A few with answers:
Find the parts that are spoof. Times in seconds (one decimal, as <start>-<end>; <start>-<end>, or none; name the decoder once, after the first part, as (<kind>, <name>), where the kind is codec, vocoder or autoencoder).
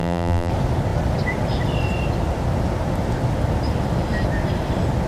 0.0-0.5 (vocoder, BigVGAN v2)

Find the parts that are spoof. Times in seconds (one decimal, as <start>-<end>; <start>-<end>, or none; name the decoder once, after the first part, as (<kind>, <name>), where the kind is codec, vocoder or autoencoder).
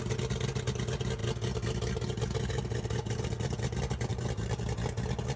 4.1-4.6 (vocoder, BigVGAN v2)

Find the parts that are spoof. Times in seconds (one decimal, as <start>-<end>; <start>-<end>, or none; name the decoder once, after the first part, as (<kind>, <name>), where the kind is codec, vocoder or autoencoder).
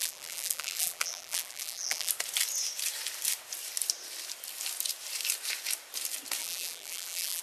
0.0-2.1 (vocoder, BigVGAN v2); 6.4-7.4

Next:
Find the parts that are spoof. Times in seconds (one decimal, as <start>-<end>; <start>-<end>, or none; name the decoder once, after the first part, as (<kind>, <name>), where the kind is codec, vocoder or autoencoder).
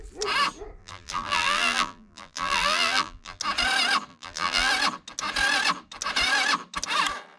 0.8-3.4 (vocoder, BigVGAN v2); 4.1-4.7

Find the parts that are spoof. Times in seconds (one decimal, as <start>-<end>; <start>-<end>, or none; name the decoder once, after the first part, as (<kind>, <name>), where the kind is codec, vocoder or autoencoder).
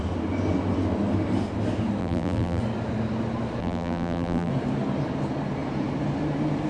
2.0-2.6 (vocoder, BigVGAN v2); 3.6-4.5